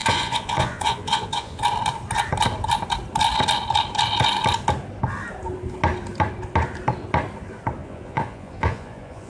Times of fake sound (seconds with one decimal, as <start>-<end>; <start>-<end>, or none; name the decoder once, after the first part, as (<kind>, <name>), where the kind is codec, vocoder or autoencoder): 0.0-1.6 (vocoder, Vocos); 7.8-9.3